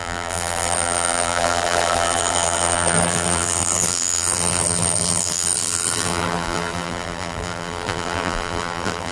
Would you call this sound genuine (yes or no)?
no